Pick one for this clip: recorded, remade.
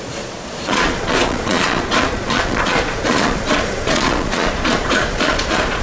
remade